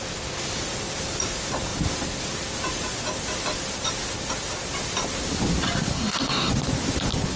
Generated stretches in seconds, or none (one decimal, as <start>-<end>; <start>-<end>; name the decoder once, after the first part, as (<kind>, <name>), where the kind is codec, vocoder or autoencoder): 5.9-6.5 (codec, SNAC)